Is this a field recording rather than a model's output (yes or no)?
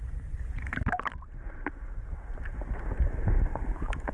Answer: no